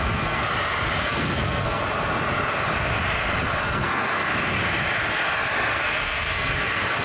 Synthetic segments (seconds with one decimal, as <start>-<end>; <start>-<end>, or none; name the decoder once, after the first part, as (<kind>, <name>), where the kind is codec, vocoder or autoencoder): 0.0-0.4 (codec, SNAC); 1.0-1.8; 3.6-4.3; 5.7-7.0